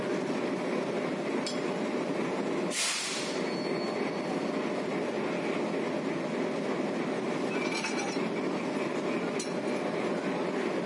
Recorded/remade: recorded